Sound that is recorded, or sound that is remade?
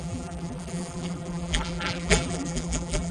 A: remade